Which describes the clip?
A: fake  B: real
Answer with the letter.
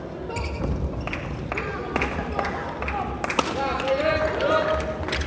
B